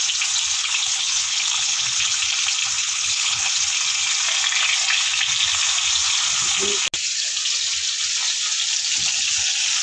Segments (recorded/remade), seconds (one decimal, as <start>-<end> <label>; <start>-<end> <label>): 0.0-0.6 recorded; 0.6-2.2 remade; 2.2-2.8 recorded; 2.8-3.5 remade; 3.5-9.8 recorded